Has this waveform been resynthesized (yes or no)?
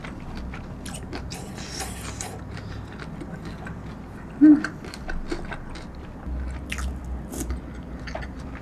no